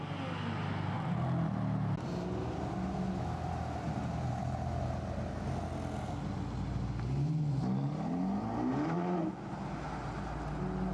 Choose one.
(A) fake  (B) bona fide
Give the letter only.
B